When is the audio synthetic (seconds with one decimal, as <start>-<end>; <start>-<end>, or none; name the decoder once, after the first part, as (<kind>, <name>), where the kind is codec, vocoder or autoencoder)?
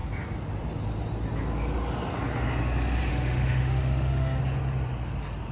3.1-4.4 (autoencoder, DAC-VAE)